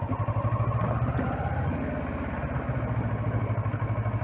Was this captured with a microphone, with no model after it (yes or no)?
yes